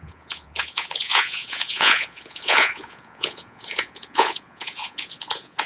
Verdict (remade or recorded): remade